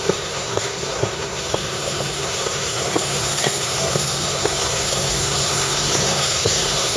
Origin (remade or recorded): remade